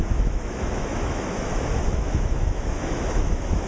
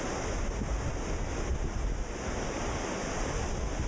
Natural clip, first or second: second